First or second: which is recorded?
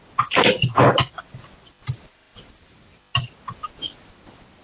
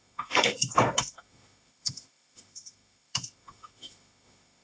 first